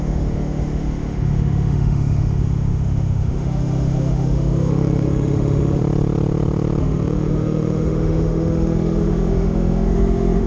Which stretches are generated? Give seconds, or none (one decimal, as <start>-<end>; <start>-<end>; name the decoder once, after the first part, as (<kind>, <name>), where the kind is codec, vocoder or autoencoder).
0.0-5.8 (autoencoder, DAC-VAE); 6.8-10.5